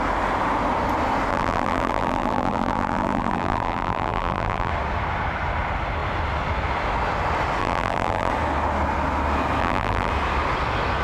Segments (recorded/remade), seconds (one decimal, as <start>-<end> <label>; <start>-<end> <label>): 0.0-1.3 recorded; 1.3-4.7 remade; 4.7-7.6 recorded; 7.6-8.3 remade; 8.3-9.6 recorded; 9.6-10.1 remade; 10.1-11.0 recorded